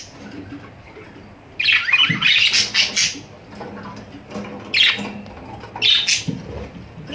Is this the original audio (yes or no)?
yes